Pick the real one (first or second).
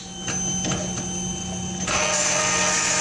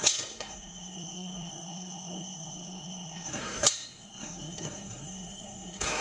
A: first